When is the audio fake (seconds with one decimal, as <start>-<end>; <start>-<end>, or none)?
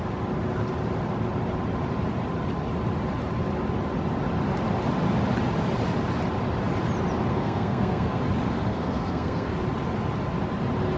7.3-8.2; 8.7-9.5